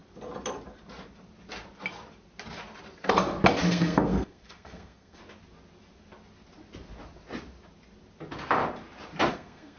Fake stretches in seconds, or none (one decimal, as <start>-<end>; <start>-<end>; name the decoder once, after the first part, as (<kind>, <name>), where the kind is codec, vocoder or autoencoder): 3.7-5.2 (codec, SNAC); 9.3-9.8